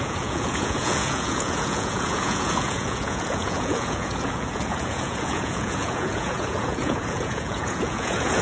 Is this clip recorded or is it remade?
remade